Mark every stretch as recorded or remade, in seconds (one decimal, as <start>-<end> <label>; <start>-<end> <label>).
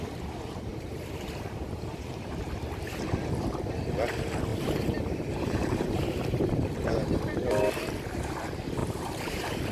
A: 0.0-0.7 recorded; 0.7-2.7 remade; 2.7-4.5 recorded; 4.5-7.1 remade; 7.1-8.8 recorded; 8.8-9.7 remade